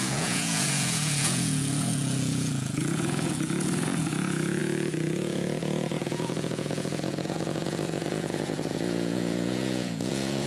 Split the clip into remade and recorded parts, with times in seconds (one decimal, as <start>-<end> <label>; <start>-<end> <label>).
0.0-10.5 remade